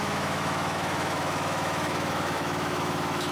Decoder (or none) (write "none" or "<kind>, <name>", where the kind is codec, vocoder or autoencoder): autoencoder, DAC-VAE